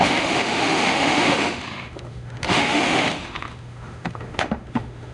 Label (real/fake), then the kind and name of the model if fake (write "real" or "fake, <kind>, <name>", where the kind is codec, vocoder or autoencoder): fake, autoencoder, DAC-VAE